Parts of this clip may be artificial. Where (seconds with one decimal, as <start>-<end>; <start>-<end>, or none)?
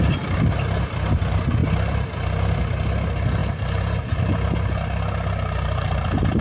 none